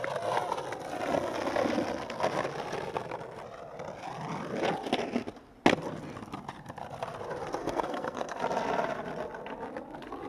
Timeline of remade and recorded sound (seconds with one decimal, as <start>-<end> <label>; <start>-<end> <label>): 0.0-7.6 recorded; 7.6-8.4 remade; 8.4-10.3 recorded